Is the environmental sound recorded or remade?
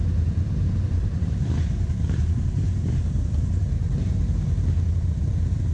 remade